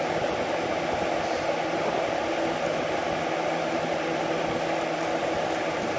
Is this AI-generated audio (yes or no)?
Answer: no